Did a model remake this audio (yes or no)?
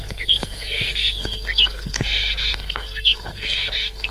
yes